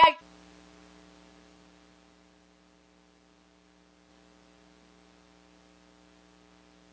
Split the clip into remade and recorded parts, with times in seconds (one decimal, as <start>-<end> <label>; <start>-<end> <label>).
0.0-6.9 recorded